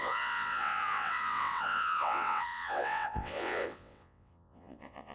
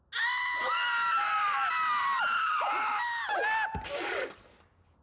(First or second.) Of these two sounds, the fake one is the first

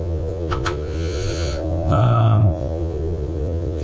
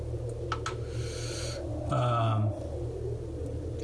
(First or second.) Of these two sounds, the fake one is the first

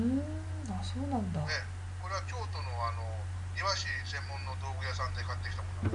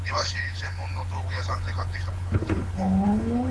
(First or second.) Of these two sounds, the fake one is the second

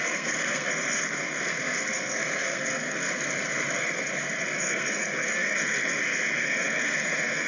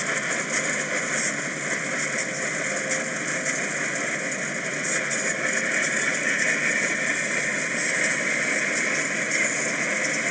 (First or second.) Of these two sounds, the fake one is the first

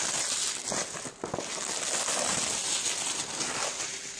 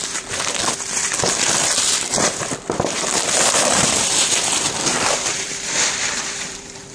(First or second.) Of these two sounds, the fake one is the second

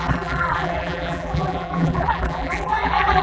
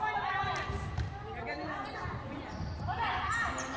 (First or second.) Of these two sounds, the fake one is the first